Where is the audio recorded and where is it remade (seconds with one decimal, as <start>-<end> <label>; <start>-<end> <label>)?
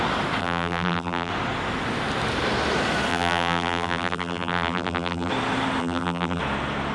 0.0-0.4 recorded; 0.4-1.3 remade; 1.3-3.1 recorded; 3.1-5.3 remade; 5.3-5.8 recorded; 5.8-6.4 remade; 6.4-6.9 recorded